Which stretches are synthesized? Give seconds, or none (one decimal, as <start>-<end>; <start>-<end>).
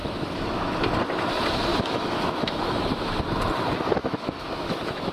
0.0-0.8; 1.7-3.2; 4.0-5.1